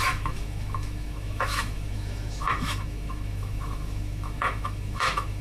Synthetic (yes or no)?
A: yes